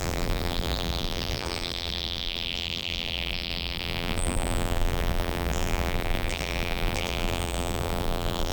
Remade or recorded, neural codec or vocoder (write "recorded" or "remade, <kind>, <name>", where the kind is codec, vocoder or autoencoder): remade, vocoder, BigVGAN v2